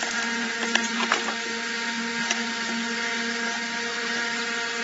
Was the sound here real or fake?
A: real